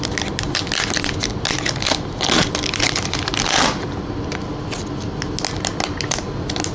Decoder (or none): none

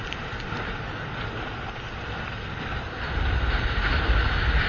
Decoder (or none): none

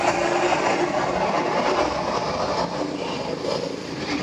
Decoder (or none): none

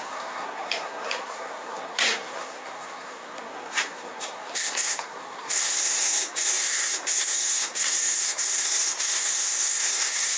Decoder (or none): codec, SNAC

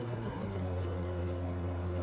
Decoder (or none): codec, SNAC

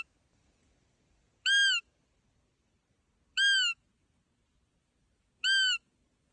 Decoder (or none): none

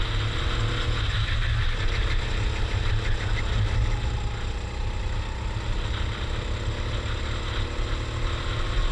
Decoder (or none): none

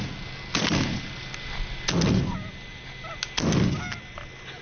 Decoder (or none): none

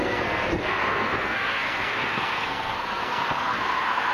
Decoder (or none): codec, SNAC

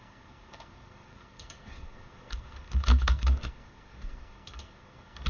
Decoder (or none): codec, SNAC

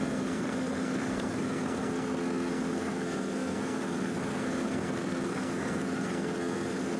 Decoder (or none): codec, SNAC